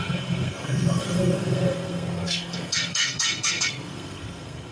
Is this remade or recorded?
remade